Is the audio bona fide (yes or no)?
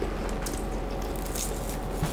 yes